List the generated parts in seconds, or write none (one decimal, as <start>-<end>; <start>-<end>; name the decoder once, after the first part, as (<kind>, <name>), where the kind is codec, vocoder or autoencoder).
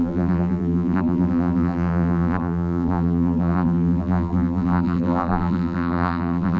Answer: 0.0-6.6 (vocoder, BigVGAN v2)